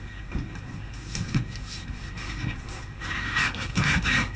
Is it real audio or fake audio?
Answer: fake